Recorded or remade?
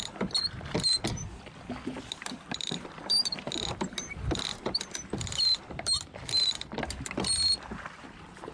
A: recorded